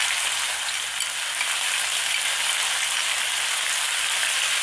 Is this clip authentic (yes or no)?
yes